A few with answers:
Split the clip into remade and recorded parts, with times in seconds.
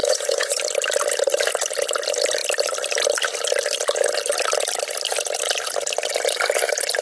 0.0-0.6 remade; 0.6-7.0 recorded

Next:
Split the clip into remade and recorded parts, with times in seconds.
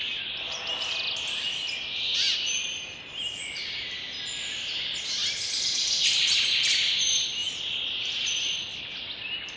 0.0-9.6 recorded